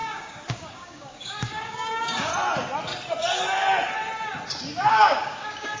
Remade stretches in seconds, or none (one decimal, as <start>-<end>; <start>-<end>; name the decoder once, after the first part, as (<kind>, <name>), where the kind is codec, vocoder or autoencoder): 0.0-2.3 (codec, DAC); 4.9-5.8